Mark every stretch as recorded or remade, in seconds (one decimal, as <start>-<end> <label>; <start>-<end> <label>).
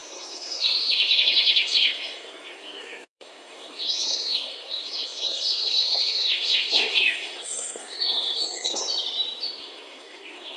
0.0-8.8 remade; 8.8-9.6 recorded; 9.6-10.6 remade